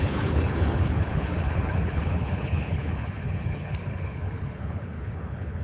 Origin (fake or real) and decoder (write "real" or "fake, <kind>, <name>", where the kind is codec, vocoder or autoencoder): fake, codec, HILCodec